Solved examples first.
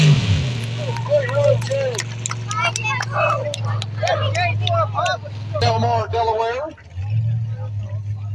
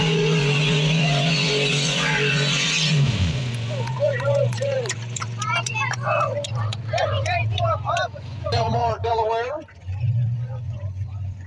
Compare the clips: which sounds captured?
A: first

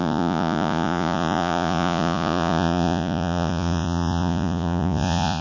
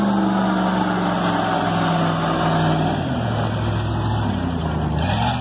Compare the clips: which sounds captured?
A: second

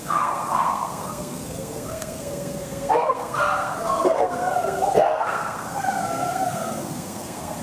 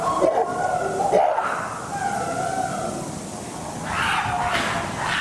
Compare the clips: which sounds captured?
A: second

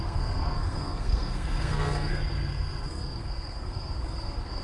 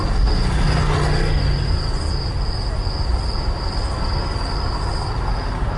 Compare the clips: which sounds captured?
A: second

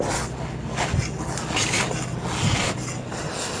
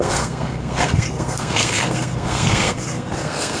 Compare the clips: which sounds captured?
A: first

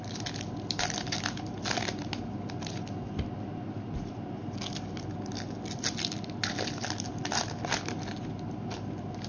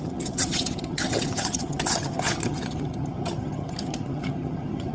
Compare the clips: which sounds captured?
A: first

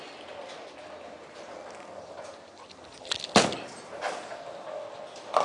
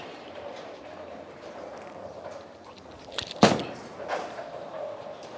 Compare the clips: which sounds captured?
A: first